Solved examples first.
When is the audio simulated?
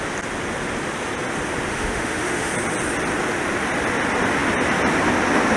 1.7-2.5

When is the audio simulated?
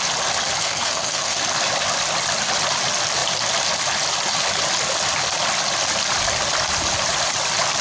0.6-1.4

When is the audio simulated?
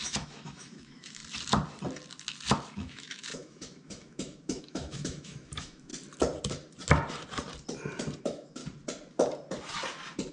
0.0-1.2; 2.7-5.9; 8.2-8.6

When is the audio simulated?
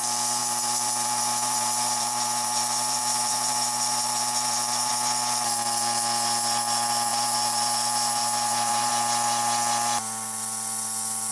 0.4-4.9; 7.1-8.9